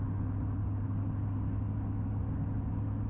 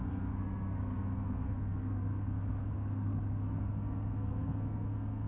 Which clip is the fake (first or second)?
second